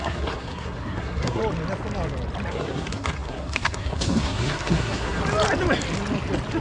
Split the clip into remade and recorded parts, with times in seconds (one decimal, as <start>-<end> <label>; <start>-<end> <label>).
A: 0.0-1.4 remade; 1.4-2.5 recorded; 2.5-5.2 remade; 5.2-6.6 recorded